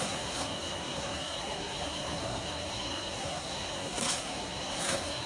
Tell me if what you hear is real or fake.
fake